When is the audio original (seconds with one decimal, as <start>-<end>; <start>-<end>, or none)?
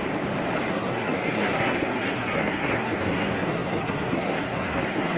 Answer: 0.0-0.7